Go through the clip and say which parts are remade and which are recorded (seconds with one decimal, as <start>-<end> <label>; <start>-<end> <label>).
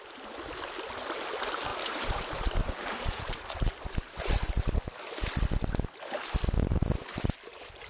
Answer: 0.0-1.7 recorded; 1.7-4.2 remade; 4.2-7.9 recorded